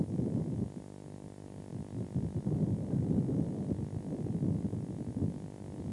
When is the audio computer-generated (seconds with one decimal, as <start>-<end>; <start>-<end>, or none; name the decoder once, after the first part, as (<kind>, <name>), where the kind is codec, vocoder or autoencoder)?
none

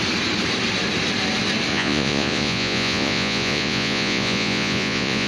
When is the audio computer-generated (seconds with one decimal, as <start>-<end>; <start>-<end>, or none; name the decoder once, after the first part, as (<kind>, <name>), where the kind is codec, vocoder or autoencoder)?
1.7-5.3 (vocoder, Vocos)

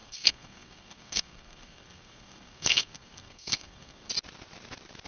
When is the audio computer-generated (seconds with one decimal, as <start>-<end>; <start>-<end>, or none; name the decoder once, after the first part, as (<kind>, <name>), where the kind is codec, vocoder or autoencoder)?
0.0-4.1 (codec, SNAC)

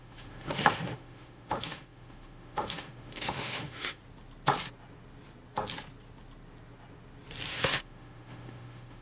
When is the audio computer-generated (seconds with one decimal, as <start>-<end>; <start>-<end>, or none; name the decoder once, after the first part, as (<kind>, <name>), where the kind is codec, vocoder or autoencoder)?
0.0-4.0 (autoencoder, DAC-VAE); 7.5-9.0

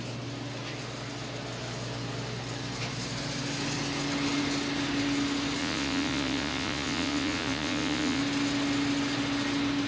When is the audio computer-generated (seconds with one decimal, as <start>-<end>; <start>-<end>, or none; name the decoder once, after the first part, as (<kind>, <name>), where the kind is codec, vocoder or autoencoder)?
5.6-8.2 (vocoder, Vocos)

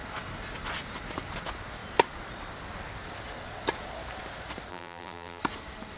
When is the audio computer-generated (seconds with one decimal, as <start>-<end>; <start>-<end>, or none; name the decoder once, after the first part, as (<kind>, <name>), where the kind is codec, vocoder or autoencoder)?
4.7-5.4 (vocoder, BigVGAN v2)